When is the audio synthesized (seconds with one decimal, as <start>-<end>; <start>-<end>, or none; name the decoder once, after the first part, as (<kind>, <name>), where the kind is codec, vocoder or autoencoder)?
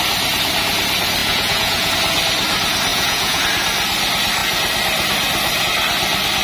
1.2-1.9 (vocoder, Vocos); 2.9-3.4